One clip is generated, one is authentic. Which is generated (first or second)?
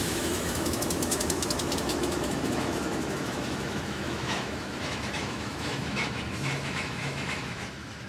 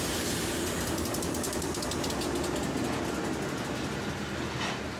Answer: first